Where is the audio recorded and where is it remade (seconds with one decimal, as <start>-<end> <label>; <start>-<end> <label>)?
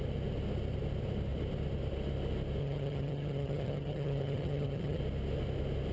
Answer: 0.0-2.6 recorded; 2.6-5.0 remade; 5.0-5.9 recorded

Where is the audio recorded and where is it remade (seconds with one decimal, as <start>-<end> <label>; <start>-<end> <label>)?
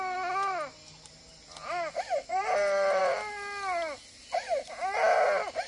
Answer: 0.0-2.3 recorded; 2.3-3.0 remade; 3.0-5.7 recorded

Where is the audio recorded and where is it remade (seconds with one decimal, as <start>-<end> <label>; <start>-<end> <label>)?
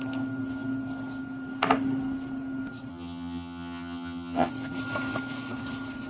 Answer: 0.0-2.9 recorded; 2.9-4.5 remade; 4.5-6.1 recorded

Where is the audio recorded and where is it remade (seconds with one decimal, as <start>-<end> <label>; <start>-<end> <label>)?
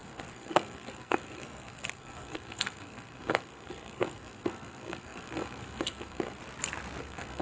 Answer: 0.0-6.4 remade; 6.4-7.0 recorded; 7.0-7.4 remade